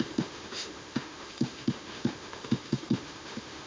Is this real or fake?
fake